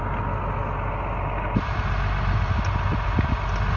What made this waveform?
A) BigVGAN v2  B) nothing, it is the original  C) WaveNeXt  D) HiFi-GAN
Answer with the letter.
B